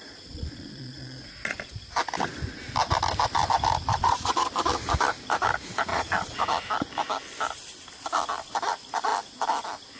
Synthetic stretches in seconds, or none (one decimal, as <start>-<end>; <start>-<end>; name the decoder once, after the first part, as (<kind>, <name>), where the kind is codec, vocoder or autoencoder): 0.0-1.7 (vocoder, Vocos); 3.9-4.5; 5.9-6.4

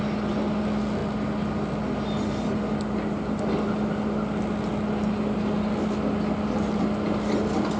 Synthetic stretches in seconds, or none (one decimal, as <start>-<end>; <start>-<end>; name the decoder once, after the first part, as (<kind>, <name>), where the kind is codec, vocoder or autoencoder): none

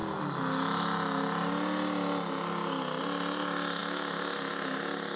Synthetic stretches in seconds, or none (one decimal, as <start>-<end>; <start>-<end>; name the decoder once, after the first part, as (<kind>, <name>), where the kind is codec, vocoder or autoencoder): none

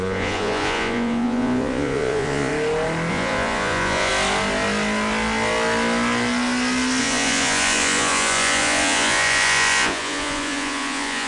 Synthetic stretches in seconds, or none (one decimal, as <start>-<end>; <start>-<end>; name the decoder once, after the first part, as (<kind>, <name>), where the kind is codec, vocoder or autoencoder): 0.0-2.5 (vocoder, Vocos); 3.1-4.1; 7.0-11.3

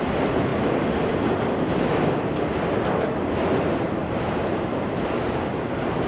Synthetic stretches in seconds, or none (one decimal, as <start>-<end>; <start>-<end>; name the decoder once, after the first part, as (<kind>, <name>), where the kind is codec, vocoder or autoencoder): 0.5-1.7 (vocoder, BigVGAN v2); 4.0-5.6

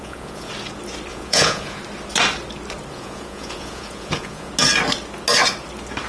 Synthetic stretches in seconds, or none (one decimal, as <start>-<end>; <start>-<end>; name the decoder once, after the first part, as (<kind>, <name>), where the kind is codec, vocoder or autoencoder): 0.0-0.5 (vocoder, Vocos); 1.1-1.8; 2.9-4.5

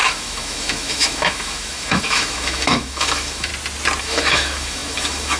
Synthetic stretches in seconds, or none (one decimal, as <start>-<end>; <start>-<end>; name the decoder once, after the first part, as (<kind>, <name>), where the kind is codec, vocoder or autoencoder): 0.0-3.5 (autoencoder, DAC-VAE); 4.0-5.4

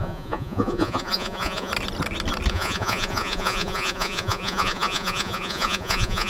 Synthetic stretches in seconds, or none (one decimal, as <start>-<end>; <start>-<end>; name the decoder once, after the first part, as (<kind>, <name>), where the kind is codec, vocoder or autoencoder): 0.0-1.7 (vocoder, Vocos); 2.5-6.3